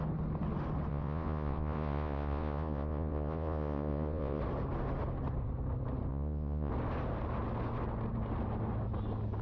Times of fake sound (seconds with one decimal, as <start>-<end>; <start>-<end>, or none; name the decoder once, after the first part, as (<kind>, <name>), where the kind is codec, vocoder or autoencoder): 0.9-4.4 (vocoder, Vocos); 6.1-6.7